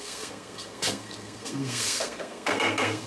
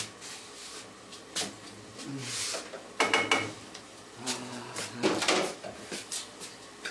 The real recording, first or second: second